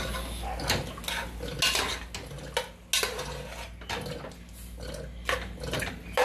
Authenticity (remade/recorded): recorded